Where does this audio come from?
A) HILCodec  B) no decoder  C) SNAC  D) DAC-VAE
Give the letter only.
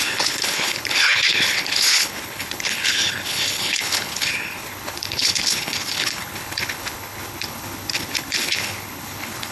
A